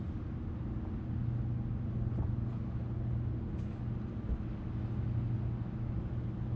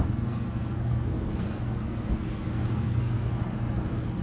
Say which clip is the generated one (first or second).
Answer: second